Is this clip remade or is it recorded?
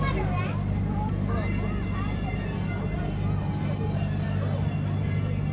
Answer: recorded